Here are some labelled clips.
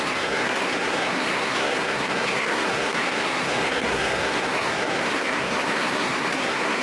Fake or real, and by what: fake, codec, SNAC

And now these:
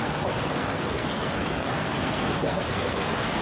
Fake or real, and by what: fake, codec, SNAC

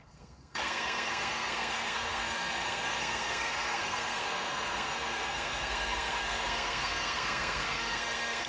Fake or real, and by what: fake, codec, SNAC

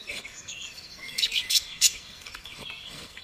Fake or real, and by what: fake, codec, SNAC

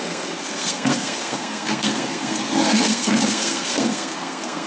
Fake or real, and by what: fake, codec, SNAC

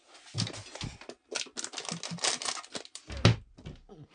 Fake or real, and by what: real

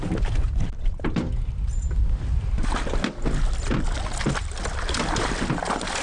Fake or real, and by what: real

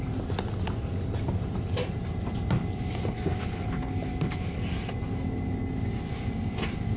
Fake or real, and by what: real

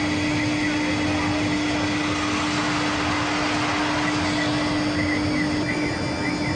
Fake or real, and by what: real